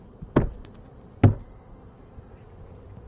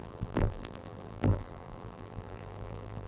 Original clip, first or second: first